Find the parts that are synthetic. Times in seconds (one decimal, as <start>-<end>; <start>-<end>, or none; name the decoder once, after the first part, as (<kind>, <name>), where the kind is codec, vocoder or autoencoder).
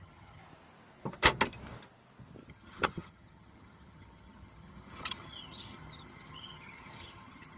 0.0-0.4 (vocoder, HiFi-GAN); 2.5-7.6